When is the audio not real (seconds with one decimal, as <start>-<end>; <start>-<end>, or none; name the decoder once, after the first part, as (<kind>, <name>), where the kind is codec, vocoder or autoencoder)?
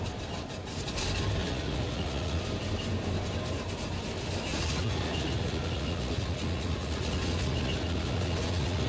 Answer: 1.4-2.4 (vocoder, Vocos); 4.5-8.9